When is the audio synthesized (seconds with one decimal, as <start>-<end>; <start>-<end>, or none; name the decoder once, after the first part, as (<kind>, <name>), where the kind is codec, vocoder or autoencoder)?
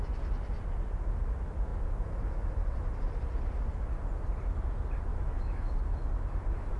5.1-5.8 (autoencoder, DAC-VAE)